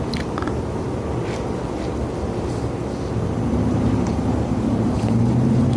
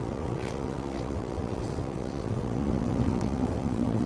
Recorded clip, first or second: first